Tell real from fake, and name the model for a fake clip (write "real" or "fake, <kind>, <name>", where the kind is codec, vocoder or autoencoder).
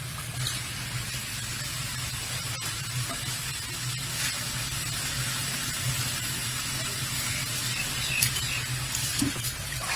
real